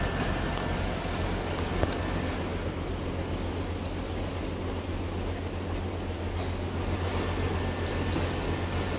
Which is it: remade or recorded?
recorded